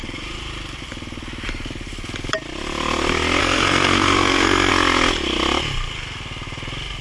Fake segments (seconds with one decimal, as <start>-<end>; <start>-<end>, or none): 3.4-4.7